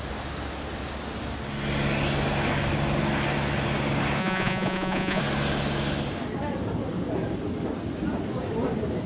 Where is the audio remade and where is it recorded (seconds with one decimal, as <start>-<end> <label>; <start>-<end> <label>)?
0.0-4.2 recorded; 4.2-5.2 remade; 5.2-9.1 recorded